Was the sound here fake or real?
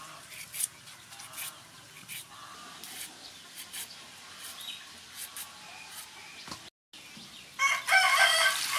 real